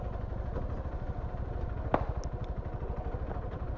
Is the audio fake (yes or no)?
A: no